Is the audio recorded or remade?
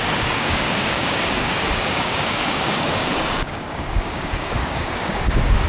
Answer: remade